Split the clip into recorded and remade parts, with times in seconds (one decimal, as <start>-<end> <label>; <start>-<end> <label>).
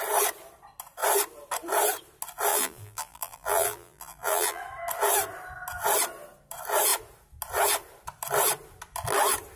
0.0-2.5 recorded; 2.5-4.6 remade; 4.6-9.6 recorded